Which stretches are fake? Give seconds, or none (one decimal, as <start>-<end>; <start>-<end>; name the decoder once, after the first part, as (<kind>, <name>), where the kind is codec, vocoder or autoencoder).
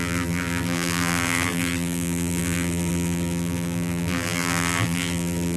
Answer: 0.0-5.6 (vocoder, BigVGAN v2)